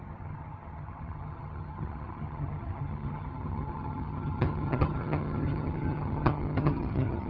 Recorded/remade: remade